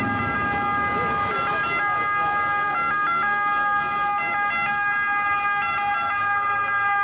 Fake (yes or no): no